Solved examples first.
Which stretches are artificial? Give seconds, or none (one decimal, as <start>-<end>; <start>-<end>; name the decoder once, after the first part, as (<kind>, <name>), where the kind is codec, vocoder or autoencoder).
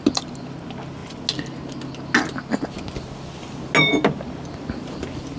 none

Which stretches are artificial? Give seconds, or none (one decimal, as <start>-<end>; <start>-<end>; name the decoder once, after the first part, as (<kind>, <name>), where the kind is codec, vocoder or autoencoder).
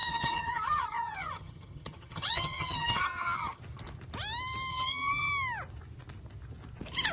0.0-3.6 (vocoder, HiFi-GAN); 4.7-5.3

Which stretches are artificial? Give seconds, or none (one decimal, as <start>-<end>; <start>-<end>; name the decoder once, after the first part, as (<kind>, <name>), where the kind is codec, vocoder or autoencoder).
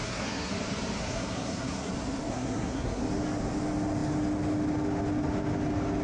0.0-0.5 (codec, SNAC); 1.0-1.9; 2.3-3.0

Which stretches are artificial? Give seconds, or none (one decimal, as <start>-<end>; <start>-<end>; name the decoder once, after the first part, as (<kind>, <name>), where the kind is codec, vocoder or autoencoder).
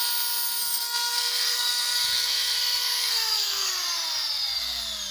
0.6-3.7 (codec, SNAC)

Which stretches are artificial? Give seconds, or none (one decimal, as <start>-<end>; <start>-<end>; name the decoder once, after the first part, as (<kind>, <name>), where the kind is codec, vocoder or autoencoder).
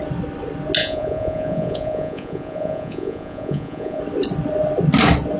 0.8-4.0 (vocoder, Vocos)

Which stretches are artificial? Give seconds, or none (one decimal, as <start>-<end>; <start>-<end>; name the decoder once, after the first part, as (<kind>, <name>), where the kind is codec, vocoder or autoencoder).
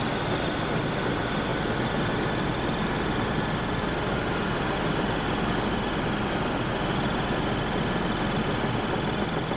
none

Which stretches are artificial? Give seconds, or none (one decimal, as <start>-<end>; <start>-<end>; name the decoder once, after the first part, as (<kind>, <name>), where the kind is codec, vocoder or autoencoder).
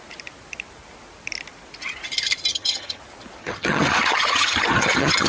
2.5-3.0 (vocoder, HiFi-GAN); 3.4-5.3